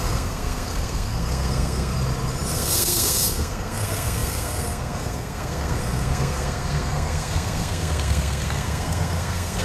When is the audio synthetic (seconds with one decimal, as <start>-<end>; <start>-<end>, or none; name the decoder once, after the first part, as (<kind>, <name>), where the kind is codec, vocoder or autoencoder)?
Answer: 0.0-1.9 (codec, SNAC); 2.5-9.6